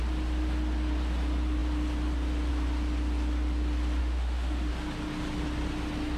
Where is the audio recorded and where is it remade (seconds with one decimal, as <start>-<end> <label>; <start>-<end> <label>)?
0.0-4.0 recorded; 4.0-4.7 remade; 4.7-6.2 recorded